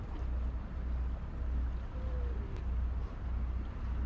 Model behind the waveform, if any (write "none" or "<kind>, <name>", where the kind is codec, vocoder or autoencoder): none